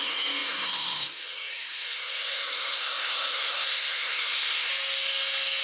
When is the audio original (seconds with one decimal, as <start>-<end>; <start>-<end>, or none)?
4.7-5.6